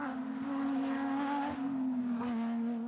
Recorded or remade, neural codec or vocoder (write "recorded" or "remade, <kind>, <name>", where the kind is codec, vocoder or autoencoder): recorded